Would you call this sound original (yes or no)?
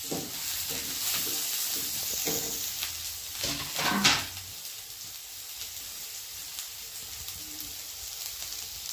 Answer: yes